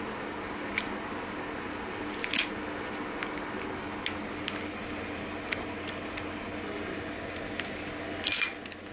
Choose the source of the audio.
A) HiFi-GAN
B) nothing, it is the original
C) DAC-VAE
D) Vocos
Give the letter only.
B